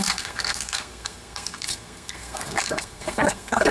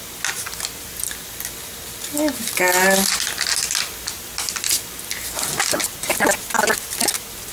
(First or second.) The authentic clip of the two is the second